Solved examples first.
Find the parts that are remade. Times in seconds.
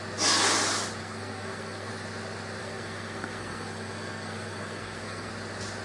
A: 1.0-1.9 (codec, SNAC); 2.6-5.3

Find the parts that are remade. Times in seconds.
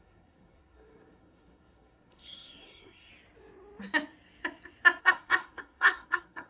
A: 0.0-3.1 (codec, SNAC); 5.0-6.5